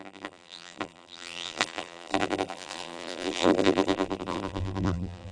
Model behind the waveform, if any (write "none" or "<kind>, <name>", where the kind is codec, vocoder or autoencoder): vocoder, BigVGAN v2